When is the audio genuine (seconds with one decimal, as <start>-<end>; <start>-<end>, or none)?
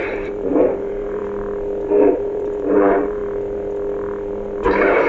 1.2-2.1; 3.2-5.1